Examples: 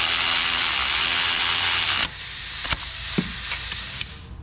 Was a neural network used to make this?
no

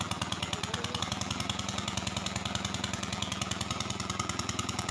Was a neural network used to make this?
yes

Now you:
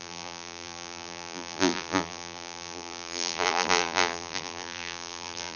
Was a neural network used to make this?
yes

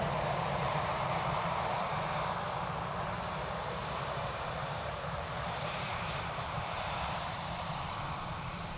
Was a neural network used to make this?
yes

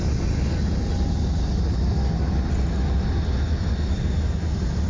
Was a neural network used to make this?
no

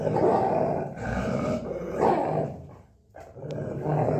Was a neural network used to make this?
yes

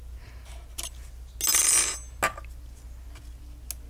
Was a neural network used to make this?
no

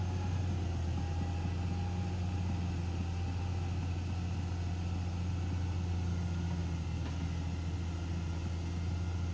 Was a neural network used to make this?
no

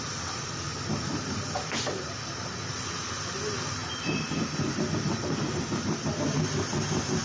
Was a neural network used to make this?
no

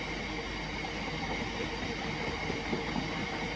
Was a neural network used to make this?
no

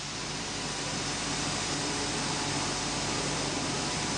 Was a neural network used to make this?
no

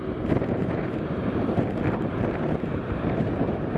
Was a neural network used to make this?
yes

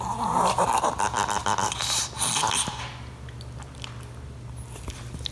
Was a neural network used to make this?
no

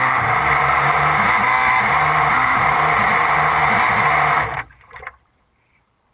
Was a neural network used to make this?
yes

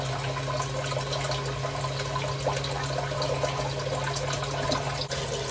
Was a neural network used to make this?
no